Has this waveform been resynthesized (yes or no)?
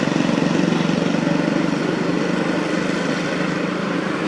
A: no